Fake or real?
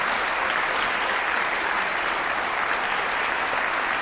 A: real